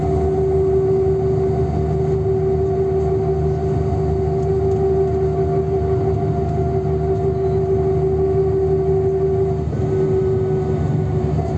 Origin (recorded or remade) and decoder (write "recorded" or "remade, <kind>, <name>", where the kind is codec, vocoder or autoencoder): recorded